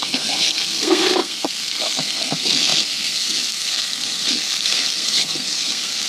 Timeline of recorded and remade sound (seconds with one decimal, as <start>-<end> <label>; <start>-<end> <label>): 0.0-6.1 remade